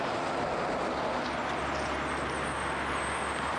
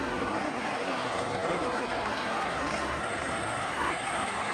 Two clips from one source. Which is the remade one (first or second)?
second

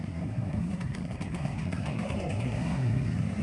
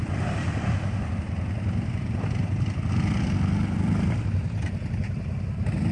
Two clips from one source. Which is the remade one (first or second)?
first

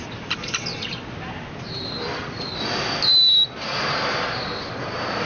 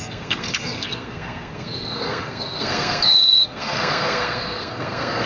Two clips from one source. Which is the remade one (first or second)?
second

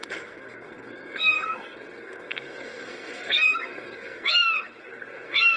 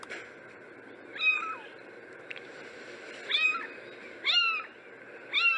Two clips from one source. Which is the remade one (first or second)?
first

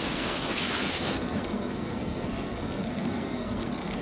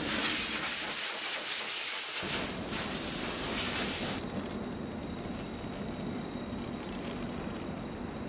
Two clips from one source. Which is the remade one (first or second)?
first